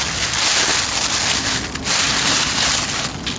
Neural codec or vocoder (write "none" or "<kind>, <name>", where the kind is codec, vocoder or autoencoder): none